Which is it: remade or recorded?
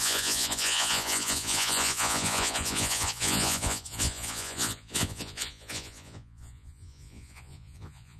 remade